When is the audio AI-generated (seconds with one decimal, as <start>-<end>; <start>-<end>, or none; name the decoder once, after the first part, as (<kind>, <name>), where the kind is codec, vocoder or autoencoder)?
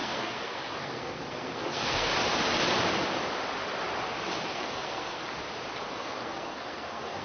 0.0-2.1 (codec, SNAC); 4.5-5.2; 5.9-7.2